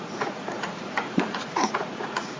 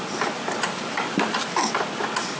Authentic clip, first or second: second